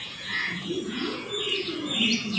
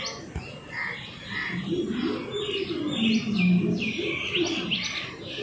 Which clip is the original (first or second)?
second